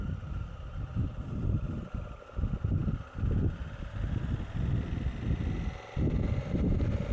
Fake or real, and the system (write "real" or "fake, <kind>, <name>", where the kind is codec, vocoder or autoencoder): real